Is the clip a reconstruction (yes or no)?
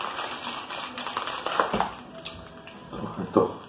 no